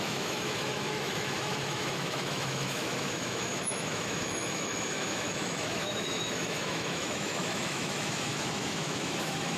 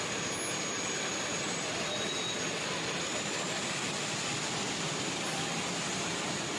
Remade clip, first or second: first